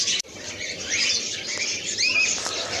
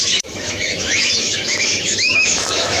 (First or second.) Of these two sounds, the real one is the first